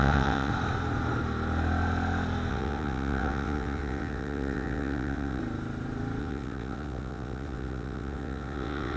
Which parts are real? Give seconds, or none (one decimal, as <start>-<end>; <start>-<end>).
0.5-2.5; 5.4-6.2